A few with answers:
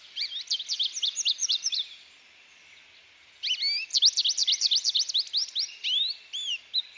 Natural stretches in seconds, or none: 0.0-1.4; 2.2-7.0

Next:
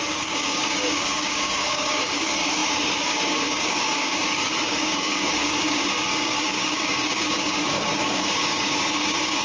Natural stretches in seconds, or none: none